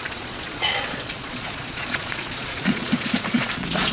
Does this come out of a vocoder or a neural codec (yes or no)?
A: yes